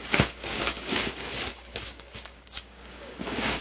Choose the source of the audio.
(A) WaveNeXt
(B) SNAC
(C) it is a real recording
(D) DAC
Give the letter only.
D